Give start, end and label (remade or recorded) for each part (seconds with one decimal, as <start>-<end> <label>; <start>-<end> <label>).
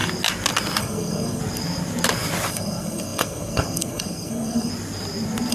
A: 0.0-0.8 recorded; 0.8-1.4 remade; 1.4-2.5 recorded; 2.5-4.7 remade; 4.7-5.5 recorded